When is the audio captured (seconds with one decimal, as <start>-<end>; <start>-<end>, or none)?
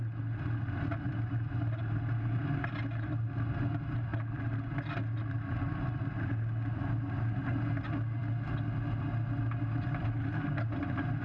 0.0-11.2